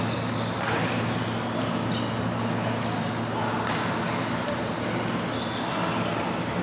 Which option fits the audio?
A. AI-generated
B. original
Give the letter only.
B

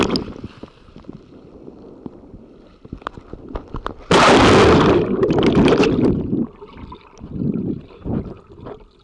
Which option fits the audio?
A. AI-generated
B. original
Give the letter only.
B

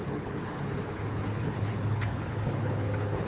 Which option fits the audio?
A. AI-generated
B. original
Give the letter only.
A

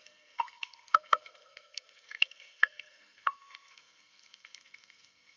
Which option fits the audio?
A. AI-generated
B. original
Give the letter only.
A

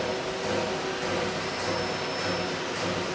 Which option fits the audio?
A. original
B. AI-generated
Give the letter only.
A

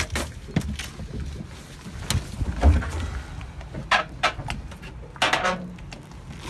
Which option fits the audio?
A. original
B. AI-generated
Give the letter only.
A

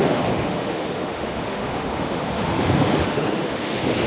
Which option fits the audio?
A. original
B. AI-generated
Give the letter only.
B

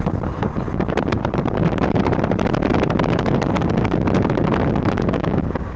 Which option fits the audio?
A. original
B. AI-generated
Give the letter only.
B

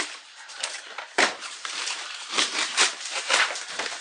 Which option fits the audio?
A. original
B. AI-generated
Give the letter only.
B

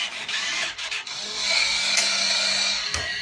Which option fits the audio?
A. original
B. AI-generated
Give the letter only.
B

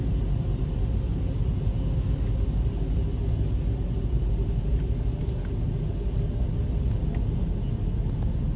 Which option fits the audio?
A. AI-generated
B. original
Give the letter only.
B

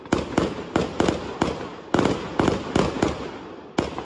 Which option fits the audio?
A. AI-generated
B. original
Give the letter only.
B